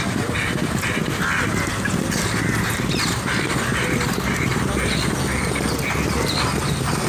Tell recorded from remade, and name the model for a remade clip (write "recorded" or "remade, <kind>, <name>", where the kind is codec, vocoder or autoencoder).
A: recorded